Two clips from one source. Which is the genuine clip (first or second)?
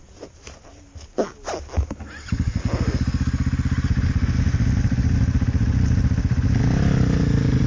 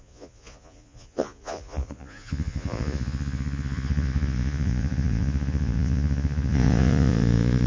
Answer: first